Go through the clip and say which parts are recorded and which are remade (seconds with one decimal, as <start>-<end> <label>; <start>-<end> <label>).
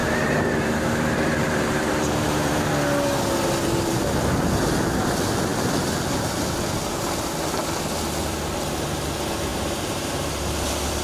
0.0-2.6 remade; 2.6-9.5 recorded; 9.5-10.4 remade; 10.4-11.0 recorded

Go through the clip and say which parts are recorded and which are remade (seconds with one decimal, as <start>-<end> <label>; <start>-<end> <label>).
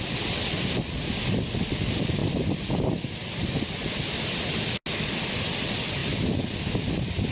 0.0-7.3 recorded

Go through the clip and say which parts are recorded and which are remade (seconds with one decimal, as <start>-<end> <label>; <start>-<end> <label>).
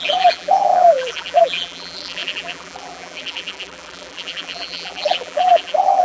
0.0-6.0 remade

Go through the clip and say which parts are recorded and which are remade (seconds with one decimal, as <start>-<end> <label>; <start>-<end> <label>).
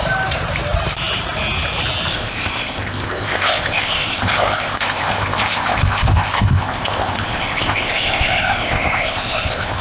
0.0-2.1 recorded; 2.1-9.8 remade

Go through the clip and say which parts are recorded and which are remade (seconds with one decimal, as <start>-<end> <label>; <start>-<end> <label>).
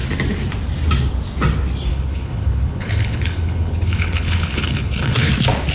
0.0-1.9 recorded; 1.9-5.3 remade; 5.3-5.7 recorded